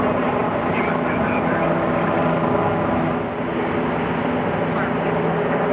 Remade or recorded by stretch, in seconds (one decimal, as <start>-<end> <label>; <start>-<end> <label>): 0.0-5.7 recorded